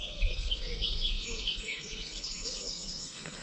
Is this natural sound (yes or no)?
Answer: no